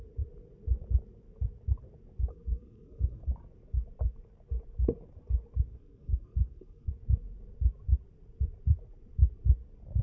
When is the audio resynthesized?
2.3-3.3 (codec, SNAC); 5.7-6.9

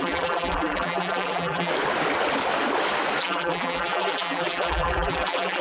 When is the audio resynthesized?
0.0-1.7 (vocoder, BigVGAN v2); 3.2-5.6

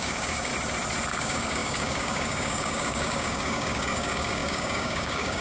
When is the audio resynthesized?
0.0-0.5 (codec, DAC); 1.1-5.4

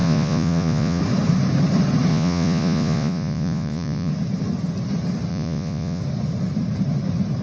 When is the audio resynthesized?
0.0-1.0 (vocoder, Vocos); 2.1-4.1; 5.3-6.0

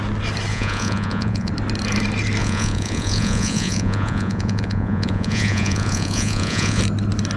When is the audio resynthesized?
0.5-1.5 (vocoder, Vocos); 2.4-6.8